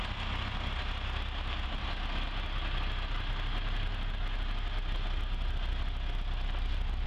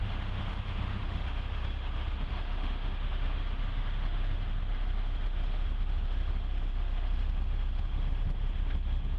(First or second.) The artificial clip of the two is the second